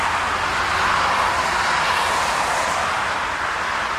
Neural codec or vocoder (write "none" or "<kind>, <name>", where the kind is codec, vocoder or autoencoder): none